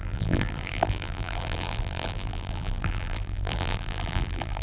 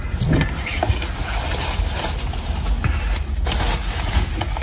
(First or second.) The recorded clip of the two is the second